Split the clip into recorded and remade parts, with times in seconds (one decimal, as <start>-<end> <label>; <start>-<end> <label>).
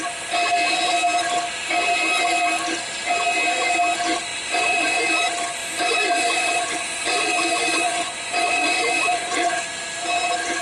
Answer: 0.0-4.3 recorded; 4.3-5.0 remade; 5.0-5.6 recorded; 5.6-9.6 remade; 9.6-10.6 recorded